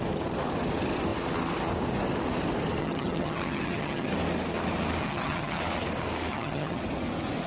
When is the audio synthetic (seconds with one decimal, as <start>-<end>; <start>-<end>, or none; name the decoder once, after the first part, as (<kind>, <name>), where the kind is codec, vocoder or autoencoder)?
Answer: 2.8-4.1 (vocoder, HiFi-GAN); 5.0-5.6; 6.3-6.8